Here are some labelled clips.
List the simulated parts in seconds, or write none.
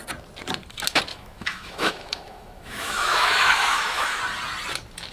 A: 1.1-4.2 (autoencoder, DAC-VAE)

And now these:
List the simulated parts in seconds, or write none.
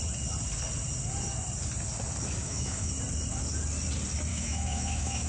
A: 2.4-2.9 (autoencoder, DAC-VAE); 4.3-5.3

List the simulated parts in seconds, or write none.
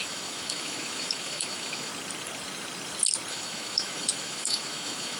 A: 0.0-1.9 (autoencoder, DAC-VAE); 3.3-5.2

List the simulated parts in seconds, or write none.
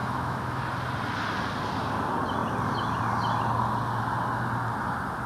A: 0.0-0.6 (autoencoder, DAC-VAE)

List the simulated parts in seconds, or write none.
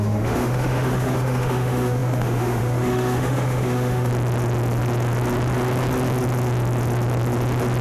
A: 0.0-4.1 (autoencoder, DAC-VAE)